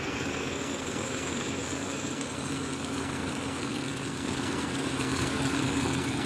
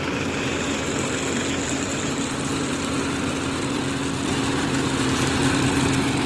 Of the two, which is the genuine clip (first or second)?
second